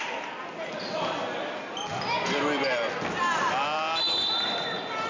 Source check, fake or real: real